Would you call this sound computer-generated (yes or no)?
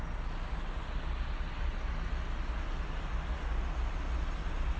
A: no